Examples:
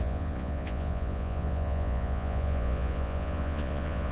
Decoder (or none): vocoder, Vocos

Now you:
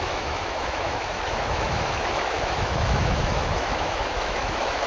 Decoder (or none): autoencoder, DAC-VAE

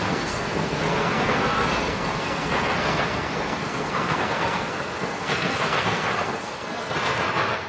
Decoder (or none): codec, SNAC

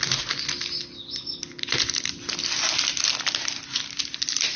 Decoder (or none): none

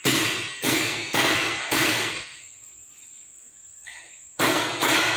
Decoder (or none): codec, SNAC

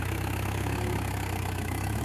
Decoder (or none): autoencoder, DAC-VAE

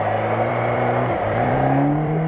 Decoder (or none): vocoder, BigVGAN v2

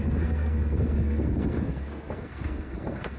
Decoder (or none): codec, SNAC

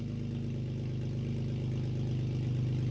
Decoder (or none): none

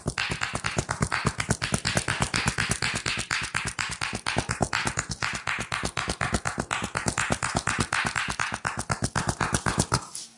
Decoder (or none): none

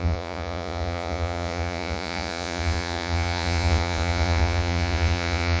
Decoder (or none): vocoder, Vocos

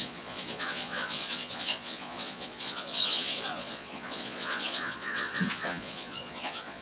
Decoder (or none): vocoder, Vocos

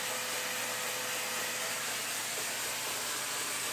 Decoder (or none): none